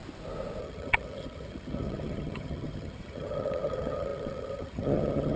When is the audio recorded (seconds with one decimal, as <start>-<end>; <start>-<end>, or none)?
0.0-0.6